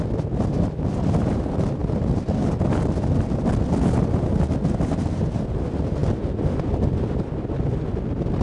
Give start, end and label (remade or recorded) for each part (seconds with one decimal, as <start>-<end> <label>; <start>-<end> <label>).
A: 0.0-8.4 recorded